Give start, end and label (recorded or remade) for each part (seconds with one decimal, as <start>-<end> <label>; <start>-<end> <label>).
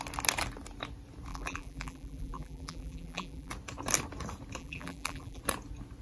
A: 0.0-1.3 recorded; 1.3-3.5 remade; 3.5-4.6 recorded; 4.6-5.4 remade; 5.4-6.0 recorded